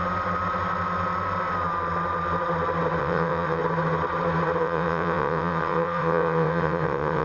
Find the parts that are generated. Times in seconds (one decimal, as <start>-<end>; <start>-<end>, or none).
3.0-3.6; 4.6-7.2